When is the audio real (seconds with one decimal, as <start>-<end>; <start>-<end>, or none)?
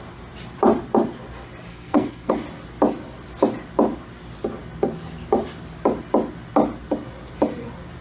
0.0-1.7; 2.3-8.0